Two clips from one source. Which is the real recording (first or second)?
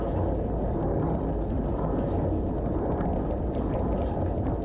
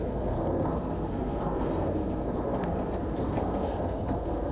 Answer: first